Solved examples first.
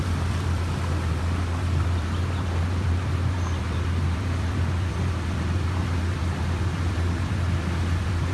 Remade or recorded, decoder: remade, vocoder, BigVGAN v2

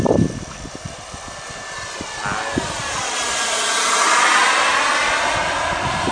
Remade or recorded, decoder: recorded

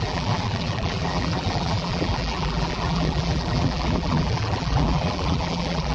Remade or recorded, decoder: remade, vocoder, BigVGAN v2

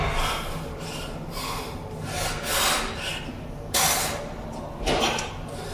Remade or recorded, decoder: recorded